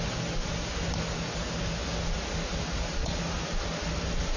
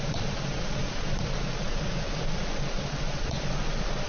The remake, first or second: second